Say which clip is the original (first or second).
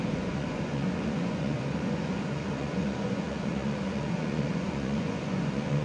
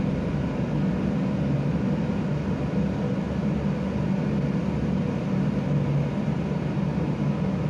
second